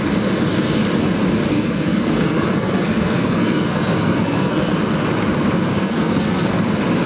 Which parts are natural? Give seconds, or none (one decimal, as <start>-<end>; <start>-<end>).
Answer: 0.0-1.5; 4.7-5.7; 6.5-7.1